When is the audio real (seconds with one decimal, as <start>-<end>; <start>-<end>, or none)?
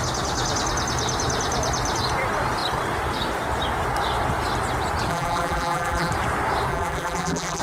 0.0-5.1; 6.1-6.7